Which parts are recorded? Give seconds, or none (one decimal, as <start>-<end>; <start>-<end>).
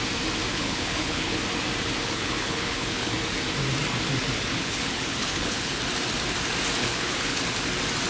0.0-0.5; 1.4-2.0; 3.1-4.5; 5.8-6.8; 7.4-8.1